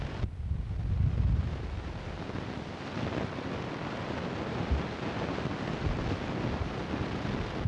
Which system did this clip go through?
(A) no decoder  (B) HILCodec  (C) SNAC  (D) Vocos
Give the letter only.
A